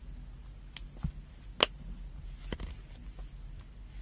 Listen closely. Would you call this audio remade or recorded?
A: recorded